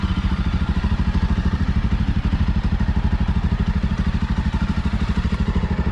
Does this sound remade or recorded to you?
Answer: remade